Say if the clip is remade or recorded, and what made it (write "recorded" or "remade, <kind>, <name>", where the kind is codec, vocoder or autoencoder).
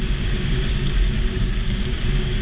remade, codec, DAC